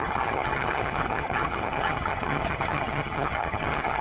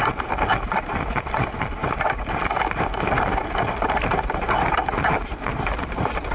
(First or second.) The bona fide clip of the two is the second